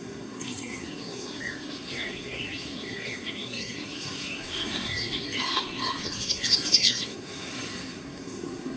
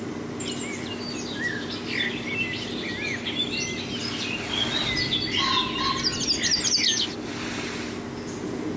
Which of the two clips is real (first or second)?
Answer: second